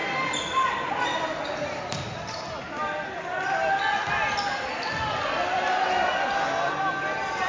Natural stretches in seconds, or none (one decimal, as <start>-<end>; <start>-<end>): 0.0-7.5